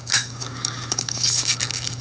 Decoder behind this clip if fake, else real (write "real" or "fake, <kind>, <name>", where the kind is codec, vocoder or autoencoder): fake, codec, DAC